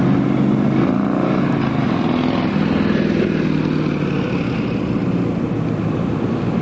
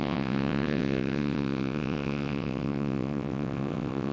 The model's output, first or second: second